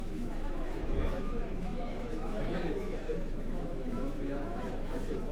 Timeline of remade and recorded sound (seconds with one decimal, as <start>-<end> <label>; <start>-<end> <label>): 0.0-5.3 remade

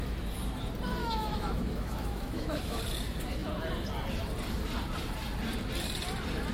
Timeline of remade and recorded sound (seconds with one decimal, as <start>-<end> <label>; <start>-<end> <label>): 0.0-1.0 recorded; 1.0-2.8 remade; 2.8-6.5 recorded